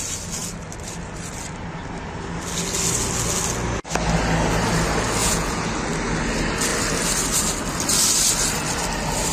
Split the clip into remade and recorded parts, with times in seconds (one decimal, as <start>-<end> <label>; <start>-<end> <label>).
0.0-5.2 recorded; 5.2-5.7 remade; 5.7-9.3 recorded